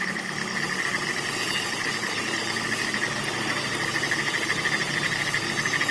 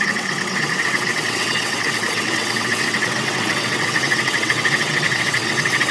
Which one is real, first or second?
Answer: first